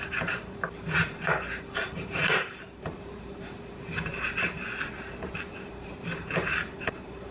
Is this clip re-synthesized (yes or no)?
yes